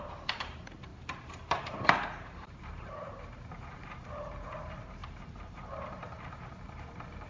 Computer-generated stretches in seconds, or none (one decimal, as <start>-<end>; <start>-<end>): 0.0-7.3

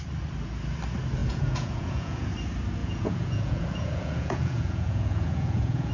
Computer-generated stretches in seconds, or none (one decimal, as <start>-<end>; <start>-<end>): 1.2-2.3; 2.8-5.9

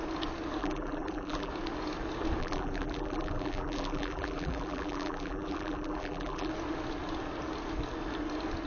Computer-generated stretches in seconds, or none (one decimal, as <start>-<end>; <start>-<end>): 0.6-1.5; 2.4-6.5

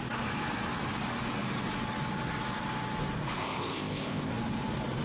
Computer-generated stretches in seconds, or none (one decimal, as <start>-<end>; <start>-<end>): 3.4-4.3

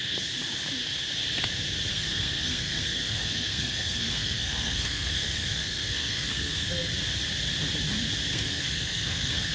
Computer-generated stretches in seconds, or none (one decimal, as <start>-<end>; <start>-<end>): 1.9-6.9; 8.3-9.5

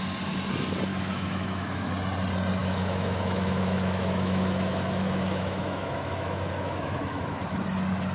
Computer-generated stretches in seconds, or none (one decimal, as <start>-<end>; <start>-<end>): 0.9-1.9; 2.6-7.4